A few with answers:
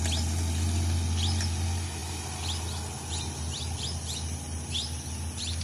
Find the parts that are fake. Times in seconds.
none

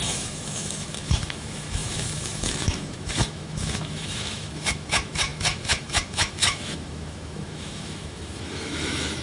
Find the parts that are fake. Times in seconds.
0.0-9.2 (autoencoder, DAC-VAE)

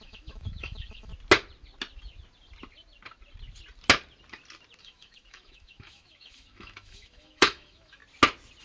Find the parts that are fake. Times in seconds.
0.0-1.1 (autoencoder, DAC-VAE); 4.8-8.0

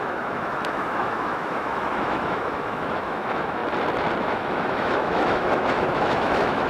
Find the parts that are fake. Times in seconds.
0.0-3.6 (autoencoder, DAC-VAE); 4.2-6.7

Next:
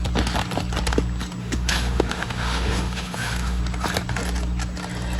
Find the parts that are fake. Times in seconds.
1.4-3.6 (autoencoder, DAC-VAE)

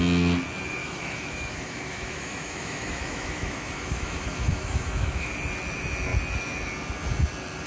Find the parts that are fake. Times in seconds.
0.8-5.3 (autoencoder, DAC-VAE)

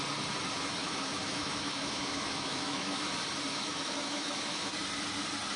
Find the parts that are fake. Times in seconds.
0.8-3.1 (autoencoder, DAC-VAE); 3.5-4.7